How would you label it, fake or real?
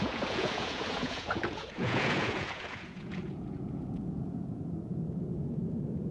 fake